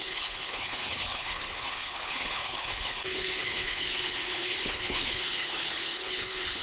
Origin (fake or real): fake